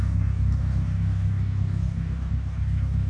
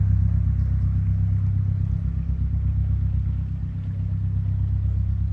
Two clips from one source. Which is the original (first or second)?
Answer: second